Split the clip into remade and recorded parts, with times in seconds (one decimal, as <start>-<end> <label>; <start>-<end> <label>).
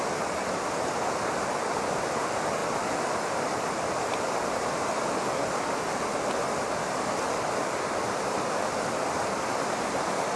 0.0-10.4 recorded